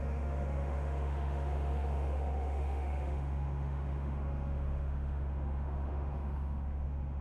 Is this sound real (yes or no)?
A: no